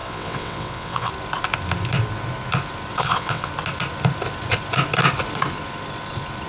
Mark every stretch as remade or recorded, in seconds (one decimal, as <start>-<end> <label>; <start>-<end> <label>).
0.0-1.1 remade; 1.1-2.9 recorded; 2.9-3.5 remade; 3.5-6.5 recorded